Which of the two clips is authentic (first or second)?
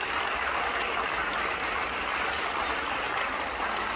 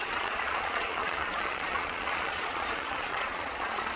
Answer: first